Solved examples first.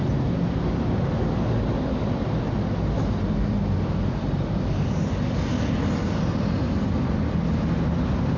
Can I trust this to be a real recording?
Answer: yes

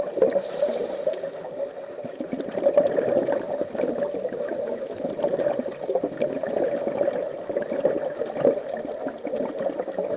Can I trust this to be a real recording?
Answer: yes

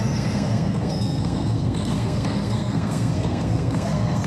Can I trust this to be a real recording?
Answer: no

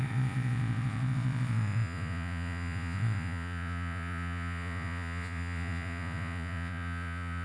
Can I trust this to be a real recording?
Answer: no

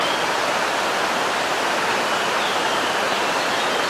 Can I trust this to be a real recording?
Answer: yes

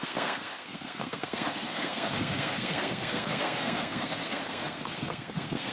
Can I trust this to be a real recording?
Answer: no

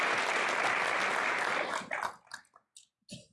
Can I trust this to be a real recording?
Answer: yes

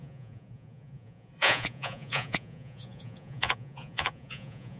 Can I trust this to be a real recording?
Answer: no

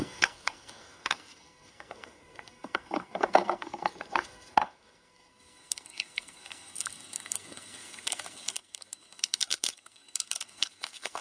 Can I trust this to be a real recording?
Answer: no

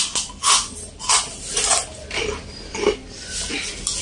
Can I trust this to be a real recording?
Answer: yes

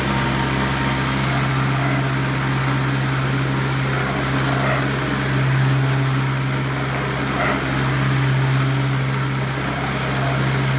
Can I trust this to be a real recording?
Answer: yes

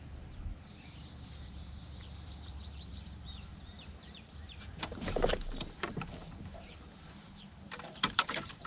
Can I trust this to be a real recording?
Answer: no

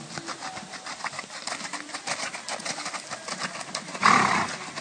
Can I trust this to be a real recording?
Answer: yes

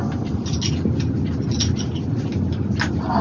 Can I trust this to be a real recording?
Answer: yes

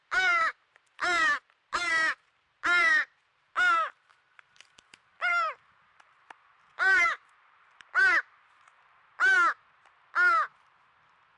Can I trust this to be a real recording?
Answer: no